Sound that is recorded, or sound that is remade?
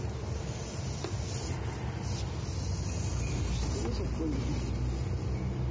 recorded